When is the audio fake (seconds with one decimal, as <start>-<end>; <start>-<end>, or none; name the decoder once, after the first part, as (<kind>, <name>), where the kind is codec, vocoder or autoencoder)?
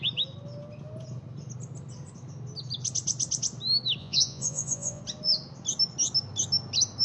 4.0-5.0 (vocoder, Vocos)